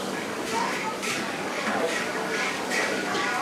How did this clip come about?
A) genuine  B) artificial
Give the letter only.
B